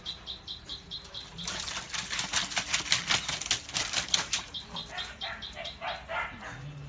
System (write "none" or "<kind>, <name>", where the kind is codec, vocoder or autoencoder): none